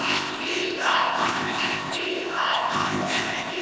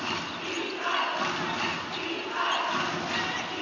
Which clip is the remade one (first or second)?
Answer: first